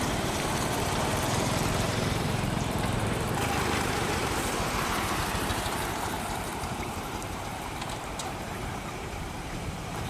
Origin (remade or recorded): remade